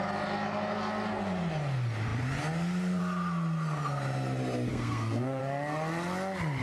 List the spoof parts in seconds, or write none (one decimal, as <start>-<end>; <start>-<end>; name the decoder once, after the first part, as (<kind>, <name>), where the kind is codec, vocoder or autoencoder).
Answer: 4.7-5.4 (codec, SNAC)